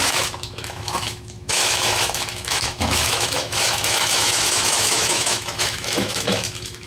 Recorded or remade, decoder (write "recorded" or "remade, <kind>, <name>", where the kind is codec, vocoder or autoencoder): remade, autoencoder, DAC-VAE